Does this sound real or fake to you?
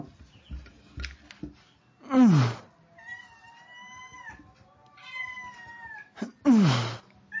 real